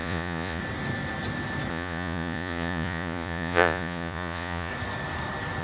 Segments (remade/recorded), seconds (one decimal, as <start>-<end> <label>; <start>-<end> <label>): 0.0-0.6 remade; 0.6-1.7 recorded; 1.7-4.7 remade; 4.7-5.6 recorded